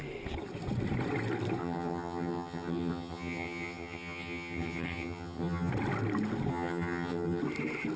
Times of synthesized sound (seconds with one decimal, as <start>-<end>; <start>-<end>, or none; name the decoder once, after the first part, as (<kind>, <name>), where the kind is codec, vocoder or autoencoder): 1.6-5.7 (vocoder, HiFi-GAN); 6.5-7.4